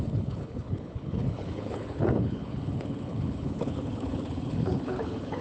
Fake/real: fake